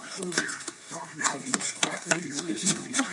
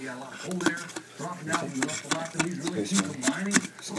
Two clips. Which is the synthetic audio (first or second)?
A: first